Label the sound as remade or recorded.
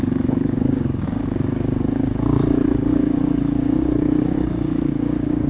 remade